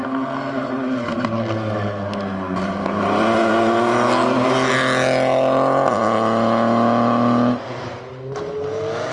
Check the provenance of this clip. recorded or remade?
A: recorded